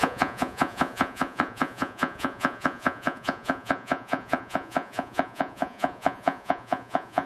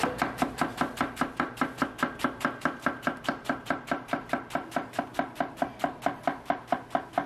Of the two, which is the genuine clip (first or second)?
second